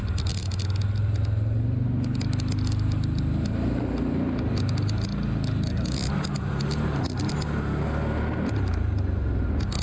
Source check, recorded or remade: recorded